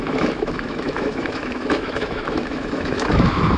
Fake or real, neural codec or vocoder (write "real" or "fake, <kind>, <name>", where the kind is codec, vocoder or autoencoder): fake, autoencoder, DAC-VAE